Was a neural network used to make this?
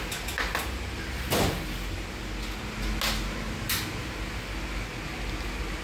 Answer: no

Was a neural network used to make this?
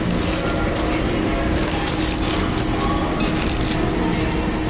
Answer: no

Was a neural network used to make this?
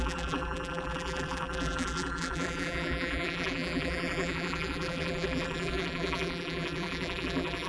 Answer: yes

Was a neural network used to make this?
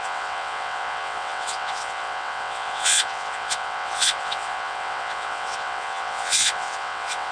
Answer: yes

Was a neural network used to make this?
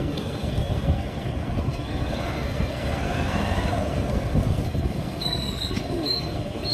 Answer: yes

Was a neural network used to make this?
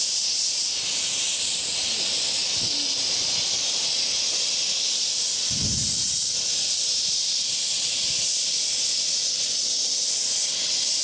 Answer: no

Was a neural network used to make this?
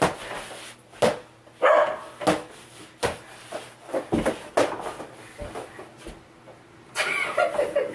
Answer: no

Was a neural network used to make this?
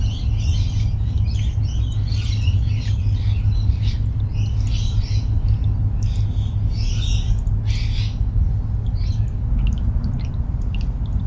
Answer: no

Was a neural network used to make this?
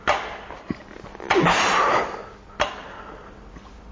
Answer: no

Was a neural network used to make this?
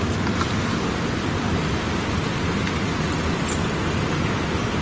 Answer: no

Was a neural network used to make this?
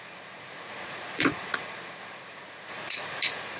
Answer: yes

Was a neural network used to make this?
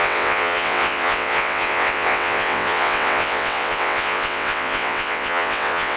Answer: yes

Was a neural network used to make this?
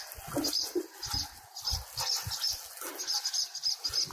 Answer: no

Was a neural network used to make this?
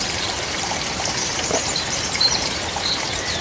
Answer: yes